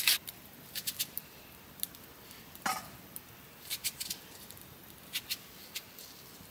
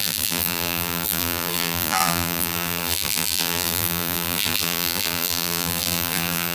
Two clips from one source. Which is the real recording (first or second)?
first